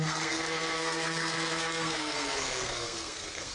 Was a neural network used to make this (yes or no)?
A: yes